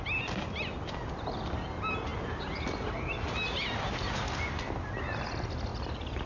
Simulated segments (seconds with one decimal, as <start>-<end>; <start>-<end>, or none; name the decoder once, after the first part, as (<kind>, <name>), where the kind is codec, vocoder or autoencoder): none